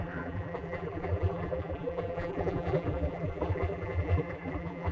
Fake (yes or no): yes